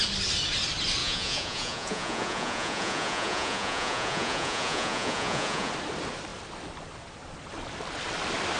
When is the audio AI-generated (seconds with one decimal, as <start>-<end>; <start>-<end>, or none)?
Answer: 1.0-5.7